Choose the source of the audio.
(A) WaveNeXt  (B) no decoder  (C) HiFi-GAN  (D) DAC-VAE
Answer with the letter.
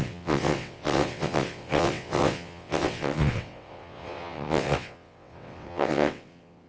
A